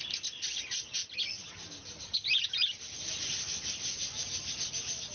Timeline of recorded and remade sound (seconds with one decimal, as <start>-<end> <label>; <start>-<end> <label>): 0.0-5.1 recorded